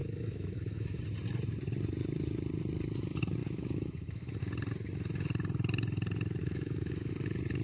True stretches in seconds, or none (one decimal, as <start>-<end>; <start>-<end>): 1.0-3.4; 4.4-6.4; 7.1-7.6

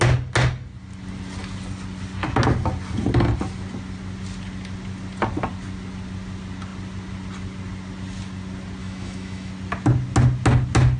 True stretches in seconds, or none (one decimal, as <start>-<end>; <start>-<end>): 0.0-8.8; 9.5-11.0

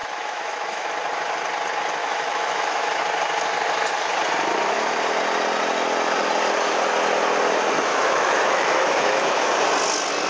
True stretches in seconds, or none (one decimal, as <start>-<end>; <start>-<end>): 0.9-2.0; 3.0-7.9; 9.6-10.3